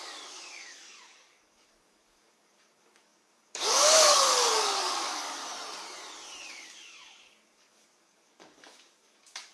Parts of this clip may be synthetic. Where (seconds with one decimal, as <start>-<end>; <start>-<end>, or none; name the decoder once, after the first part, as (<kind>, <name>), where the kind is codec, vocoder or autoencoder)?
0.0-5.4 (codec, DAC); 6.5-9.5